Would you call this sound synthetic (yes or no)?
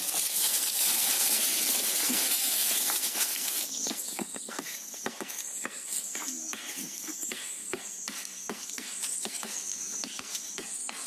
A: yes